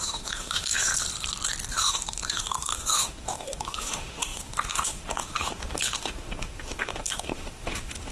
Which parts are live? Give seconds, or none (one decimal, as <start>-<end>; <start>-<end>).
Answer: 0.9-1.7